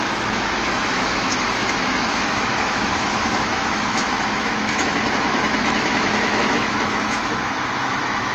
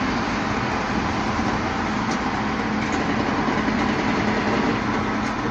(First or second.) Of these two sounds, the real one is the second